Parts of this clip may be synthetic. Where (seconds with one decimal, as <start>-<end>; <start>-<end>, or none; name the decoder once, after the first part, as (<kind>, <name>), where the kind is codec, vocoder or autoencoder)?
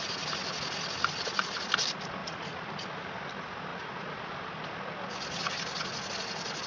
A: 2.2-2.7 (vocoder, Vocos); 3.7-4.3